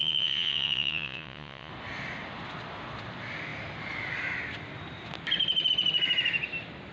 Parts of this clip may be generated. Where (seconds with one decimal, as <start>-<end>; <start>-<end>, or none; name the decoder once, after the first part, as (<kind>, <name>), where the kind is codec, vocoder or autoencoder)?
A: 0.0-1.7 (vocoder, Vocos)